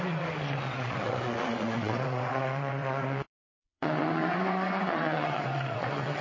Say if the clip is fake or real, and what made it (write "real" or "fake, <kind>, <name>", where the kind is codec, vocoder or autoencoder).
fake, vocoder, WaveNeXt